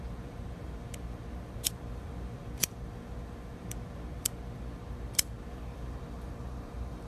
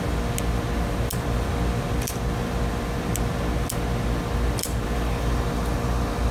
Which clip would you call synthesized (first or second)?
first